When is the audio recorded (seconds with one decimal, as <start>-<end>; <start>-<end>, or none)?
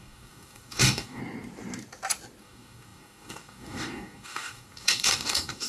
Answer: 1.2-2.4